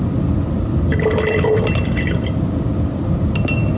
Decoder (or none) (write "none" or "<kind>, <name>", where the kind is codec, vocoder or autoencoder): none